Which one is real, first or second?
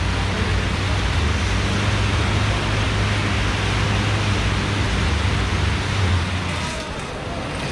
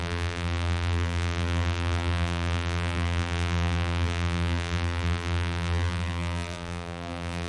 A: first